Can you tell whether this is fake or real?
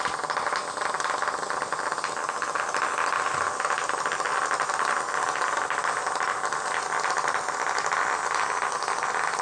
real